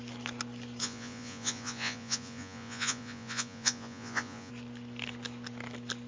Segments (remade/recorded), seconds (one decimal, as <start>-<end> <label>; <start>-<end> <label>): 0.0-0.8 recorded; 0.8-4.5 remade; 4.5-6.1 recorded